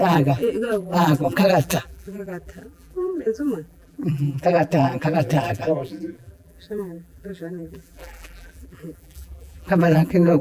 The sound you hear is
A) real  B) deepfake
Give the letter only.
B